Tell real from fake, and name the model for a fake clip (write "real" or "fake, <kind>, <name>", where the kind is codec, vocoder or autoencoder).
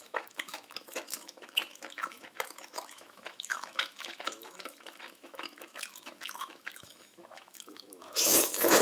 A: fake, autoencoder, DAC-VAE